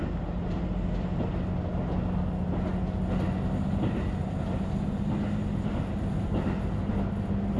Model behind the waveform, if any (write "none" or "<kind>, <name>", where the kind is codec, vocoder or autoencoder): none